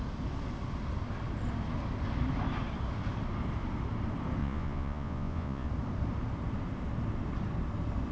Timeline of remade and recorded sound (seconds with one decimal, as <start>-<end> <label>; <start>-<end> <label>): 0.0-4.4 recorded; 4.4-5.7 remade; 5.7-8.1 recorded